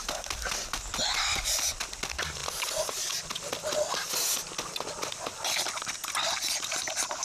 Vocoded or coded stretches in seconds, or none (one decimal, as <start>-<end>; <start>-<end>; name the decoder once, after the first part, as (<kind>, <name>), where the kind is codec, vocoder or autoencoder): none